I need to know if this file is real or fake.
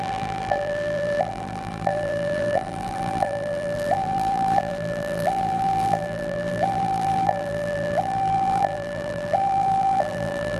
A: fake